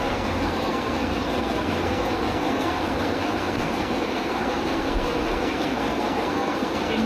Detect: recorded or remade remade